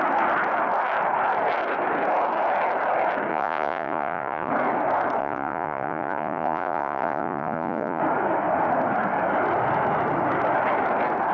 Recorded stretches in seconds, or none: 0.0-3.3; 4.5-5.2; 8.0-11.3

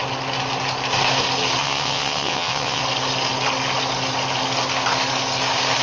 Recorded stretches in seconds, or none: 0.0-1.6; 2.8-5.8

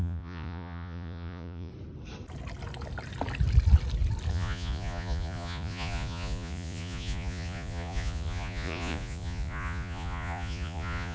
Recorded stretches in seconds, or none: 1.7-4.3

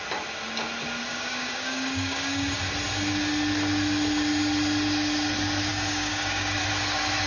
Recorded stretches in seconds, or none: 0.0-1.1; 2.6-5.7; 6.6-7.3

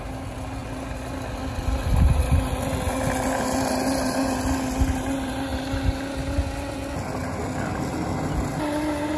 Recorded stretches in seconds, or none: 0.0-9.2